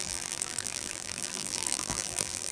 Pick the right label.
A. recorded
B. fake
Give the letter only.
B